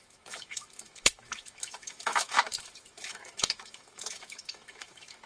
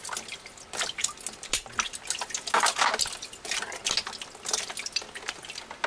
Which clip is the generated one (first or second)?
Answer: first